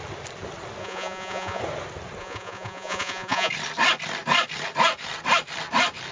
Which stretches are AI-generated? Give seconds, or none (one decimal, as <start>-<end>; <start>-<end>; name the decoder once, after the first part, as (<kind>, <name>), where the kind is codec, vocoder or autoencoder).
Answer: 0.8-1.6 (vocoder, Vocos); 2.2-3.5